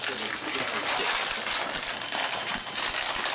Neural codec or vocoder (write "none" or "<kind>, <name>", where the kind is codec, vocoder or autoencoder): none